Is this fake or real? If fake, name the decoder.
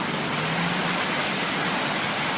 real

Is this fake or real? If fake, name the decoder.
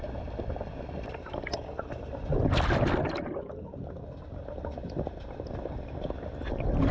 real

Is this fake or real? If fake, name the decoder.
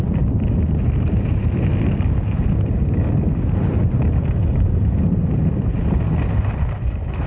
real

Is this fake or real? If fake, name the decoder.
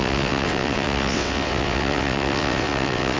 fake, vocoder, WaveNeXt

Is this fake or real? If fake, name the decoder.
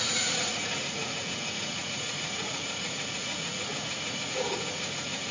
fake, vocoder, Vocos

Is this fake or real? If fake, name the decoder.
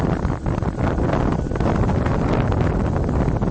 real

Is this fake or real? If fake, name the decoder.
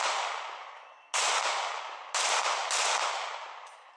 real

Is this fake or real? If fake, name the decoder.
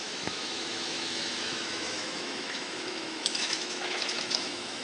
fake, autoencoder, DAC-VAE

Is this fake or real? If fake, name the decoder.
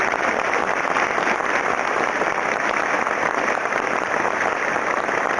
real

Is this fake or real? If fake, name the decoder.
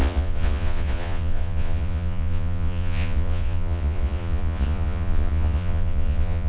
fake, vocoder, Vocos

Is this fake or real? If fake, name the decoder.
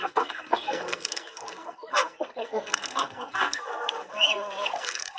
fake, codec, SNAC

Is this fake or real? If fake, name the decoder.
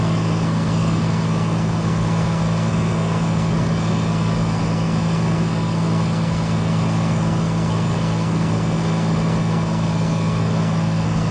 fake, codec, SNAC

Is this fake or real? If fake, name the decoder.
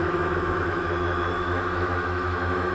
fake, autoencoder, DAC-VAE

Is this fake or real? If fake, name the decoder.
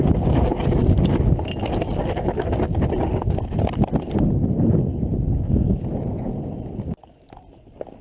real